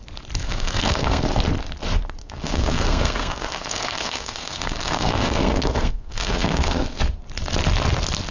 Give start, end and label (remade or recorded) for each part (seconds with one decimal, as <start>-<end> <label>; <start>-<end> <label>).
0.0-0.4 recorded; 0.4-1.2 remade; 1.2-2.2 recorded; 2.2-7.0 remade; 7.0-8.3 recorded

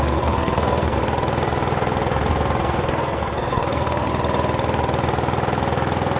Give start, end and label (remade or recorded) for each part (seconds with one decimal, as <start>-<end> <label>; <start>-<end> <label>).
0.0-1.0 remade; 1.0-2.6 recorded; 2.6-4.1 remade; 4.1-6.2 recorded

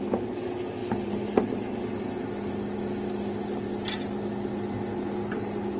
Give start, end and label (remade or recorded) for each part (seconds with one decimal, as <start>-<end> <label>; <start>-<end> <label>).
0.0-5.8 recorded